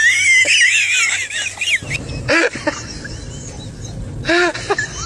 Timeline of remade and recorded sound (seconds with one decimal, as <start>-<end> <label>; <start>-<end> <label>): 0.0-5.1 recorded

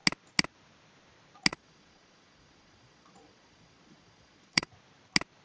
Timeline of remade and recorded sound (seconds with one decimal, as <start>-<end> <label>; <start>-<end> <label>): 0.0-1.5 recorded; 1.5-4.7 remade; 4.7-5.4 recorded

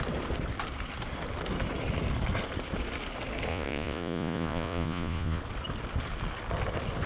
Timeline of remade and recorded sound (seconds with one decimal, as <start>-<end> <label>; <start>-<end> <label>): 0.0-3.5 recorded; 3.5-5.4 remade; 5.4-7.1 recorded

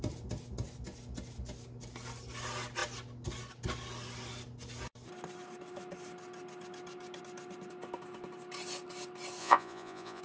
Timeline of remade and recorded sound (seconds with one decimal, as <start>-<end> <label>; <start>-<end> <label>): 0.0-9.4 recorded; 9.4-10.2 remade

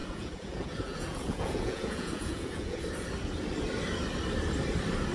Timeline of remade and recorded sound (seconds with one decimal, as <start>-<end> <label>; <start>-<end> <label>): 0.0-2.8 remade; 2.8-5.1 recorded

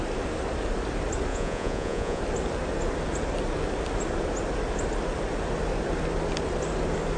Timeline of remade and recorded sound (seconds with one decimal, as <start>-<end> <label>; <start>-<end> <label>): 0.0-1.3 recorded; 1.3-2.2 remade; 2.2-7.2 recorded

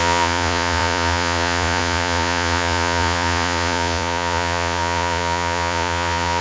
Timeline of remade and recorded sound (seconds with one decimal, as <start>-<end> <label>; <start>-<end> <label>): 0.0-6.4 remade